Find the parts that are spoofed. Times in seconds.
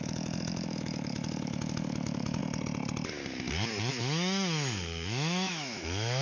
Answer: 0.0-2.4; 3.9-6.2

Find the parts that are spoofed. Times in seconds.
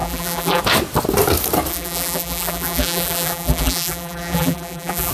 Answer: 0.0-0.6; 1.7-5.1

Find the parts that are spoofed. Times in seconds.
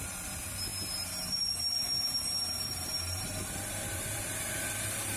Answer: 0.0-5.2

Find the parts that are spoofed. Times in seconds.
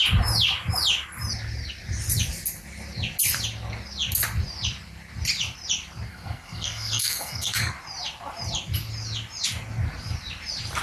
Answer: 6.1-7.7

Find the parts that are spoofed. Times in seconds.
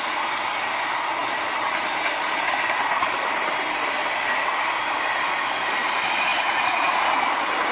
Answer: 6.3-7.1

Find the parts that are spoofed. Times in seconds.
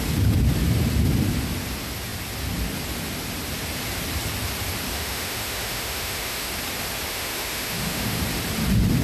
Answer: 4.9-6.5; 7.1-8.2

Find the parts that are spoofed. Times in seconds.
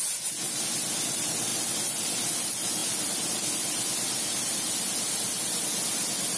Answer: none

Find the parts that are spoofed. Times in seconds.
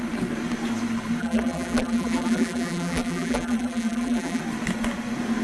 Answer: 1.2-4.4